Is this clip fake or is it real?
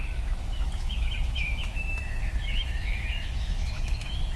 fake